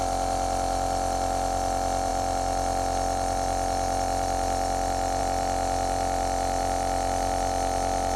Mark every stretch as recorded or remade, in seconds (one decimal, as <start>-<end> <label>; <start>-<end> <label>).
0.0-8.2 recorded